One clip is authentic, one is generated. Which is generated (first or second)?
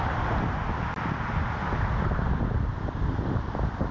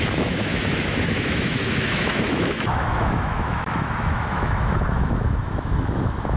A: second